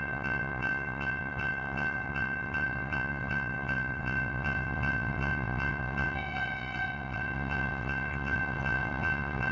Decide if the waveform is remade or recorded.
remade